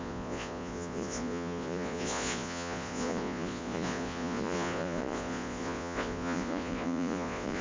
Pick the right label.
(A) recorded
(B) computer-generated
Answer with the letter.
B